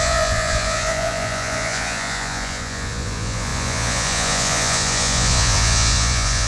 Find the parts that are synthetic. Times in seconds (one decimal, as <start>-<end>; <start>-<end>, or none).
0.0-6.5